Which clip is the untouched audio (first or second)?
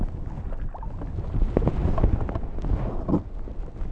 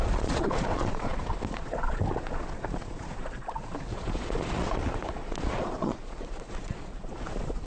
first